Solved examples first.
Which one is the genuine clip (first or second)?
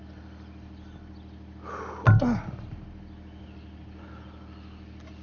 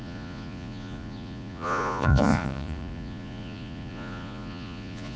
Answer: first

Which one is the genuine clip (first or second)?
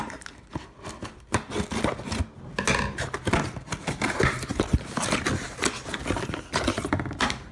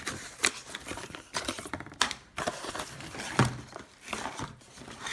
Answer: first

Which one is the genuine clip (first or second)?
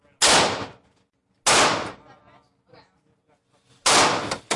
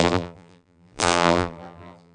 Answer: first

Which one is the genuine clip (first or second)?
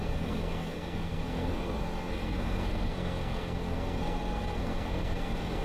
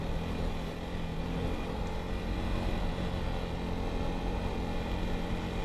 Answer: second